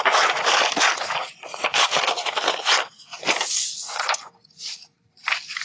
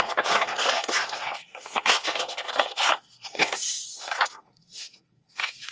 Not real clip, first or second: second